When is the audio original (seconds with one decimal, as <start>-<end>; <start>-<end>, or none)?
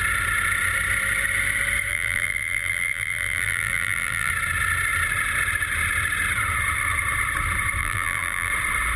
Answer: 0.0-1.9; 4.3-7.8; 8.5-9.0